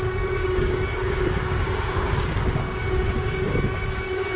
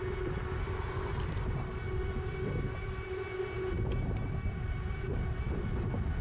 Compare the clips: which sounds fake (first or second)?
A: first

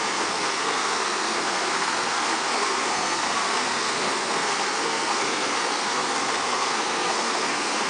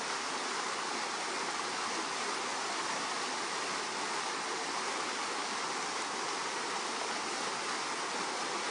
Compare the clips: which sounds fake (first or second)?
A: first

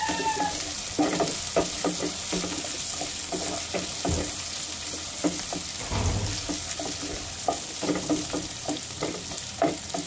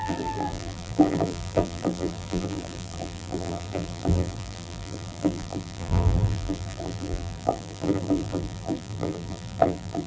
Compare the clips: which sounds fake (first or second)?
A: second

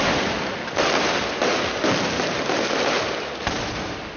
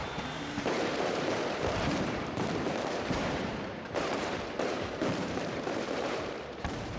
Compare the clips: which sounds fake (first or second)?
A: second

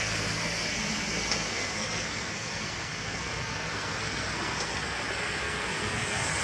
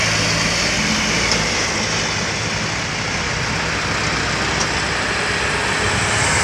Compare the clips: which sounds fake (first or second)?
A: first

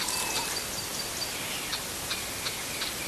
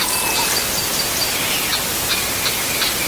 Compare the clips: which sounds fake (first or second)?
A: first